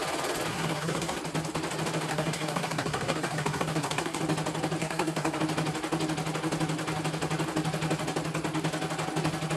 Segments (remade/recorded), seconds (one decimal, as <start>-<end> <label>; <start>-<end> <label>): 0.0-0.5 recorded; 0.5-1.2 remade; 1.2-2.1 recorded; 2.1-4.2 remade; 4.2-4.8 recorded; 4.8-5.4 remade; 5.4-9.6 recorded

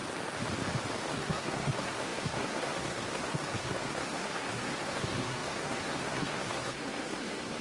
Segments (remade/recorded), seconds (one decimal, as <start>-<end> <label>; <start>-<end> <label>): 0.0-1.1 recorded; 1.1-7.6 remade

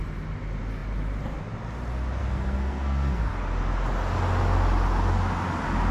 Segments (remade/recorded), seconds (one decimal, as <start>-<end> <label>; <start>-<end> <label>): 0.0-2.2 recorded; 2.2-3.3 remade; 3.3-5.9 recorded

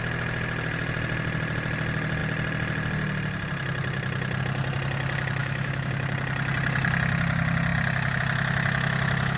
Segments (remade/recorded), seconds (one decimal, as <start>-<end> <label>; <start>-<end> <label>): 0.0-5.4 recorded; 5.4-5.9 remade; 5.9-9.4 recorded

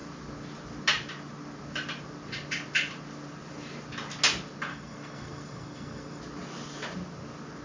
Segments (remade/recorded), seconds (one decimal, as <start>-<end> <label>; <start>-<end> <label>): 0.0-4.7 recorded; 4.7-6.2 remade; 6.2-7.6 recorded